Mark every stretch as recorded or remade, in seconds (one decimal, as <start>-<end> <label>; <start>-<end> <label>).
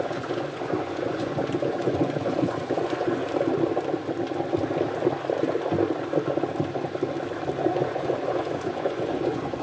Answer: 0.0-3.2 remade; 3.2-7.6 recorded; 7.6-9.6 remade